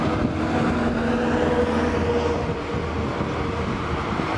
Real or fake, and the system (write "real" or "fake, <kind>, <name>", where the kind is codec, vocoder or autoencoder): real